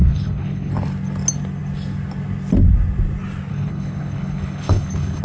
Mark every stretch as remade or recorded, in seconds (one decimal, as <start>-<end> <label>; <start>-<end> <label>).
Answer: 0.0-0.7 remade; 0.7-3.5 recorded; 3.5-5.2 remade